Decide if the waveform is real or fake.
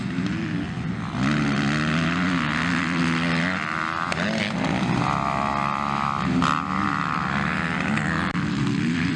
real